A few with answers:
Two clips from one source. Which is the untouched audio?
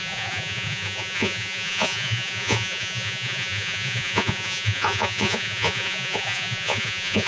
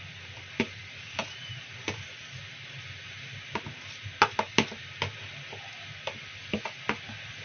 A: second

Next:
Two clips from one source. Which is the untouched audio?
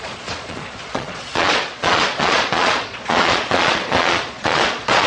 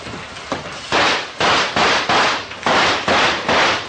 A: second